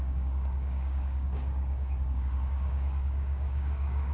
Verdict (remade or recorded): remade